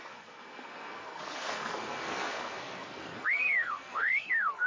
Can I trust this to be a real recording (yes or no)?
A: no